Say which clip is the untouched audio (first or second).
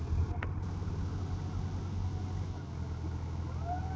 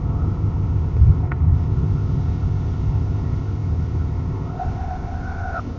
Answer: first